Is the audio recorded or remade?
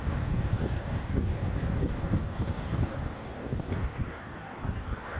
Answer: remade